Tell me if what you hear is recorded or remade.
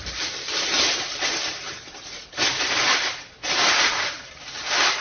remade